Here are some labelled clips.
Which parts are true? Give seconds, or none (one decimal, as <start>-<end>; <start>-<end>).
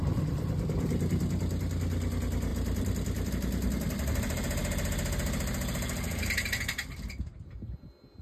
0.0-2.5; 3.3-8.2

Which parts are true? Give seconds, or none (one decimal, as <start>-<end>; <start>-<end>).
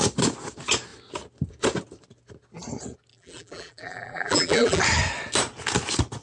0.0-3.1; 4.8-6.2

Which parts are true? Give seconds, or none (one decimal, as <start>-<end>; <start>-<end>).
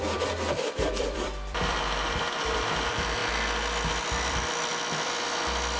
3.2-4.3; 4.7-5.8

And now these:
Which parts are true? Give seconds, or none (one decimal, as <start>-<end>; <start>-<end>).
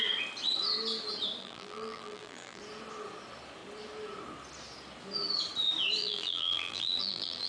0.0-1.4; 2.6-6.0